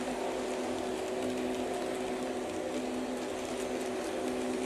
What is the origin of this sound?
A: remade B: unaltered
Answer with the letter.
B